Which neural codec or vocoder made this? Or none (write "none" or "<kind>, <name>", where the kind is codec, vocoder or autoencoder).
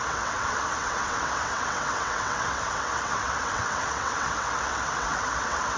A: vocoder, WaveNeXt